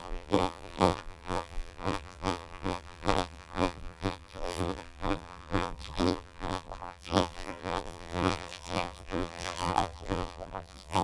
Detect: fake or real fake